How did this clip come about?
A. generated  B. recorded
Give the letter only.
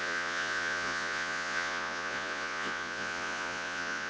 A